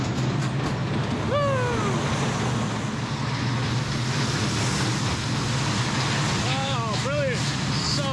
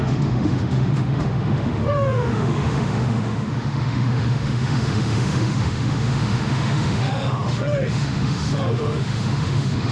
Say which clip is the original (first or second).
first